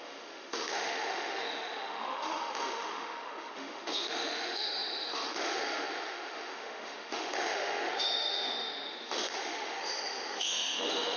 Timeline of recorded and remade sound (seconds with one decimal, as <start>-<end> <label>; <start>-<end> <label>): 0.0-11.2 remade

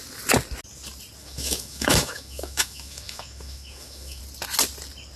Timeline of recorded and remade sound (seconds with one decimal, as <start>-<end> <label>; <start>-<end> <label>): 0.0-1.2 recorded; 1.2-4.2 remade; 4.2-5.2 recorded

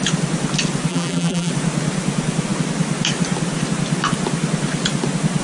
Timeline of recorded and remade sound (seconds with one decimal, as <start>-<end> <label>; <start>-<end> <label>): 0.0-0.9 recorded; 0.9-1.5 remade; 1.5-5.4 recorded

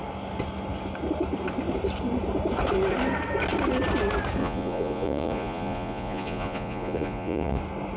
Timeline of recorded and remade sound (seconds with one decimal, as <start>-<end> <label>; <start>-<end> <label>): 0.0-4.4 recorded; 4.4-7.6 remade; 7.6-8.0 recorded

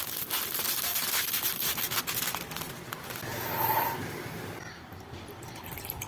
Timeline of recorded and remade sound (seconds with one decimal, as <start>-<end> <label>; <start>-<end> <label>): 0.0-3.3 recorded; 3.3-5.2 remade; 5.2-6.1 recorded

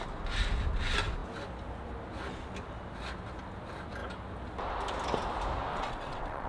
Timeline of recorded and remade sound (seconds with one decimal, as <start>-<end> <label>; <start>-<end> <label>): 0.0-5.7 recorded; 5.7-6.5 remade

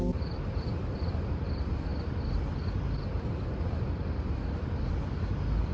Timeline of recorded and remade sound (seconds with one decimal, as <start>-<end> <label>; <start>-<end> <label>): 0.0-1.9 remade; 1.9-4.5 recorded; 4.5-5.7 remade